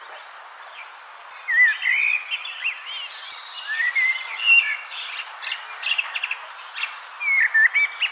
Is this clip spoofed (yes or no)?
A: no